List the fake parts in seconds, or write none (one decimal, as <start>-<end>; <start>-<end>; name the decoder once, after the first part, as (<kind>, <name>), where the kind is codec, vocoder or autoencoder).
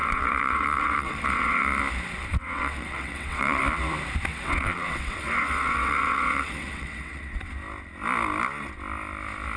0.0-1.8 (vocoder, WaveNeXt); 2.3-3.6; 4.3-7.5